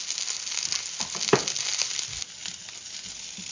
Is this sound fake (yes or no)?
no